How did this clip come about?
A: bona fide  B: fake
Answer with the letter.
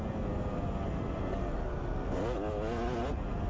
A